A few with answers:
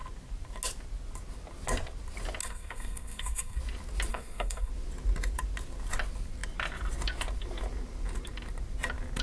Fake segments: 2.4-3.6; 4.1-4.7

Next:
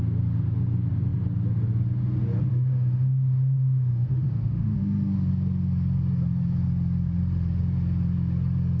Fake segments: 2.5-5.3

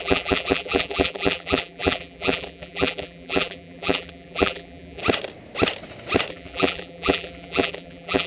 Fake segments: 0.0-5.0; 6.3-8.3

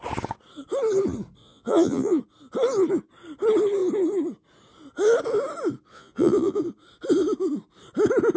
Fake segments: 1.4-2.2; 5.9-6.6